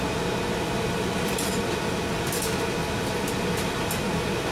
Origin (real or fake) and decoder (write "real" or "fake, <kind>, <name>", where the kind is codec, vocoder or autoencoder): real